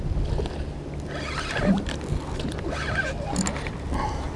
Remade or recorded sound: recorded